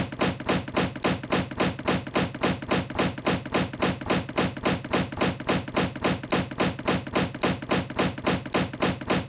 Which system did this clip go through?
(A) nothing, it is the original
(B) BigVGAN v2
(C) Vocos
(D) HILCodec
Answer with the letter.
A